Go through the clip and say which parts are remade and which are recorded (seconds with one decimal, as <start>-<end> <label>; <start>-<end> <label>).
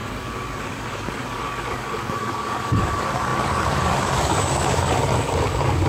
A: 0.0-5.9 remade